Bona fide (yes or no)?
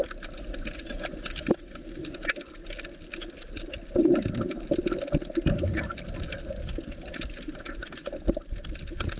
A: yes